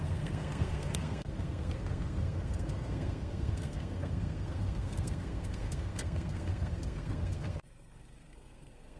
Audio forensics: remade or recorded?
remade